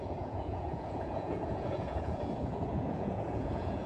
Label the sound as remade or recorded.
remade